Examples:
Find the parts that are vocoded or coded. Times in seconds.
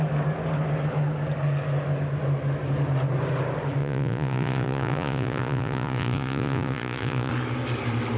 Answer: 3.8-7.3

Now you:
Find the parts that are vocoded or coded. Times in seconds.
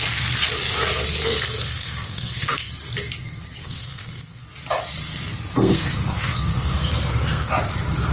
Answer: 1.2-2.7; 3.6-4.4; 5.6-7.5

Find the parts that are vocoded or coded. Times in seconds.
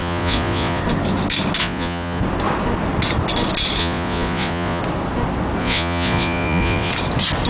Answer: 0.0-0.8; 1.6-2.2; 3.8-4.8; 5.6-6.9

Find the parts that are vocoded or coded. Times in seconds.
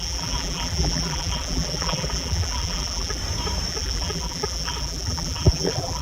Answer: 0.0-3.2; 3.7-6.0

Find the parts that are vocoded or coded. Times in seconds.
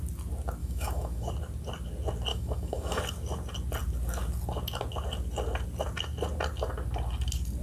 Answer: 0.6-1.3; 2.3-3.0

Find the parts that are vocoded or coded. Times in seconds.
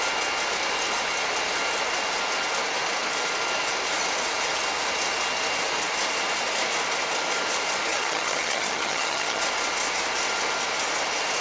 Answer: 7.9-9.4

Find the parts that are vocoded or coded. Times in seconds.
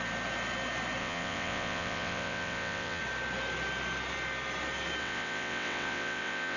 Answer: 1.0-3.0; 5.0-6.6